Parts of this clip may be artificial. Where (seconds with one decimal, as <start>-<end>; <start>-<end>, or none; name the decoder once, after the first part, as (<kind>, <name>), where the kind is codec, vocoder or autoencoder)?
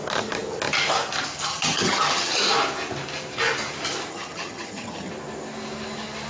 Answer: 1.5-2.4 (vocoder, HiFi-GAN); 4.1-5.1